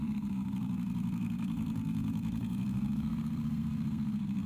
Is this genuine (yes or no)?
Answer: no